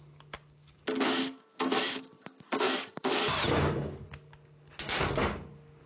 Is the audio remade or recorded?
recorded